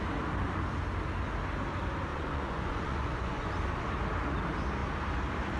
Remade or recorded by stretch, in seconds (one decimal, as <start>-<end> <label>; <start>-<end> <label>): 0.0-2.1 recorded; 2.1-3.5 remade; 3.5-5.6 recorded